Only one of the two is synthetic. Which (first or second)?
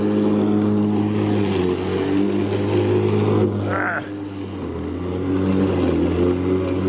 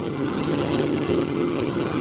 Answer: second